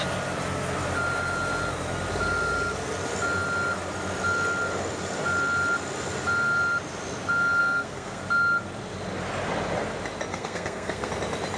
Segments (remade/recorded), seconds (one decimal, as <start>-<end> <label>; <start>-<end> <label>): 0.0-7.6 recorded; 7.6-8.2 remade; 8.2-10.3 recorded; 10.3-11.1 remade; 11.1-11.6 recorded